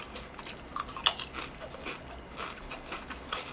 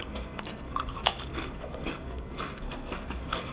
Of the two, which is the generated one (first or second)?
second